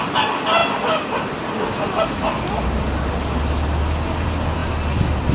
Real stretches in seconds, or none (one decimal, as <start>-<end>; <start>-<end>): 0.0-5.3